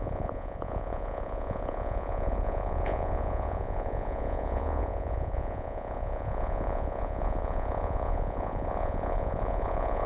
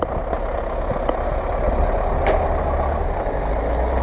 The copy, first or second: first